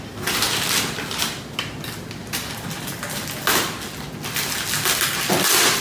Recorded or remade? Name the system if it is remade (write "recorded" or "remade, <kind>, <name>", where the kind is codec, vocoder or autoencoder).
recorded